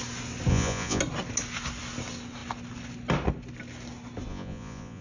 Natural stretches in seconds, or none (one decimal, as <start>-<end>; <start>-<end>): 0.0-0.5; 1.0-4.3

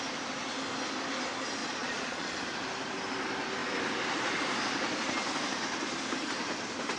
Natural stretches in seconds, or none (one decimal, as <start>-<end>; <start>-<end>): 0.0-1.6; 2.4-7.0

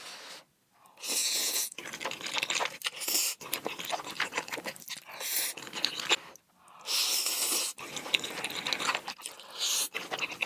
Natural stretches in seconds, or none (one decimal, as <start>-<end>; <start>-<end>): 0.0-1.2; 1.8-10.5

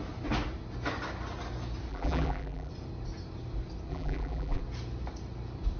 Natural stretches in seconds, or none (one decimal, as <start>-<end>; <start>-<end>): 0.0-1.9; 2.7-3.9; 4.6-5.8

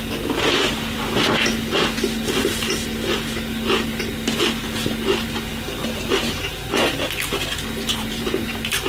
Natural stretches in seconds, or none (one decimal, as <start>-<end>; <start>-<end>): 0.0-7.9; 8.5-8.9

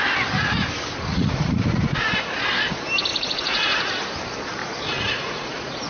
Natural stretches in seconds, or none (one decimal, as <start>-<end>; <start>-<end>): 0.0-1.1; 1.8-3.1; 3.9-4.6